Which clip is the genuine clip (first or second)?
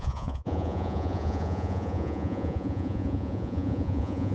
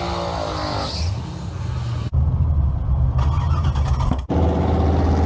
second